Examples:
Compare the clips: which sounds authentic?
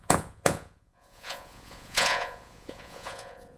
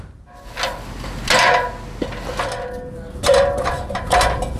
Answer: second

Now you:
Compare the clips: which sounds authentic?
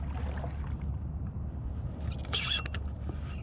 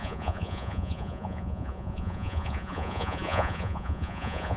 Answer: first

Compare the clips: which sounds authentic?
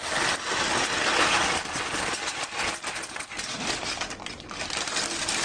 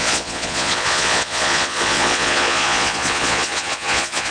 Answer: first